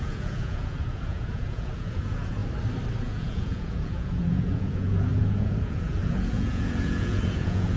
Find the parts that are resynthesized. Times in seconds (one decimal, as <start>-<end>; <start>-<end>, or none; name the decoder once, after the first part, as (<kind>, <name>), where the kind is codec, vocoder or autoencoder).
0.0-2.4 (vocoder, Vocos); 3.0-7.8